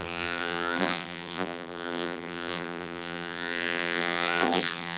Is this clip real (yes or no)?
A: no